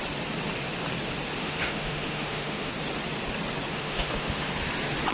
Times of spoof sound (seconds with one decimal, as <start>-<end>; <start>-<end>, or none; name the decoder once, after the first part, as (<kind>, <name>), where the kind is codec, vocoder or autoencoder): 1.4-2.7 (autoencoder, DAC-VAE); 3.7-4.5